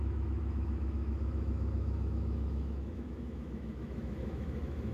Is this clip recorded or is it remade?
remade